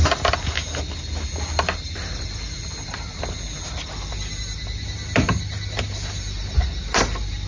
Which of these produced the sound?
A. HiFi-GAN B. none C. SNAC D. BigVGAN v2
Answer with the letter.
B